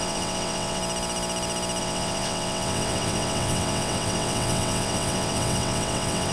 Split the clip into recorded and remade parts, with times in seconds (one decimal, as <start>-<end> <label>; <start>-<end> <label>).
0.0-0.8 remade; 0.8-1.8 recorded; 1.8-6.3 remade